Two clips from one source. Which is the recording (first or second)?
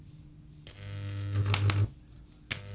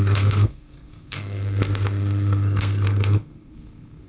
first